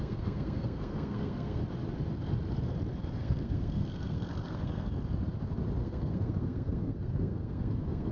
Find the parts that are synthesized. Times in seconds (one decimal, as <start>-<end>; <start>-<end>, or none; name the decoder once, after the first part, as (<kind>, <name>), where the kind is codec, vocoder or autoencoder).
0.0-1.6 (codec, SNAC); 3.2-4.9; 5.8-8.1